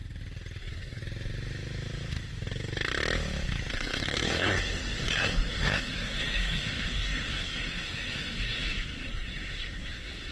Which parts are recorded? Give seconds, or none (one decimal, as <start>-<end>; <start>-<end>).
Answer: 0.0-0.6; 1.0-3.7